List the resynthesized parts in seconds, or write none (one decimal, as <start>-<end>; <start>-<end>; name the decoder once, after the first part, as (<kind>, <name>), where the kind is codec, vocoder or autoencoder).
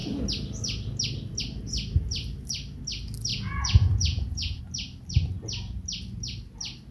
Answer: 3.3-4.6 (vocoder, Vocos)